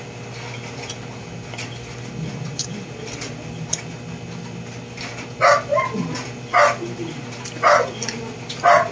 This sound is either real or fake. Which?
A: real